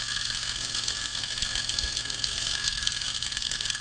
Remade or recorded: remade